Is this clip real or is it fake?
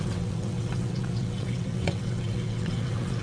fake